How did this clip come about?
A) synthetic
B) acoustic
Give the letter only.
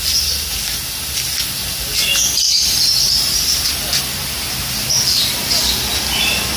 B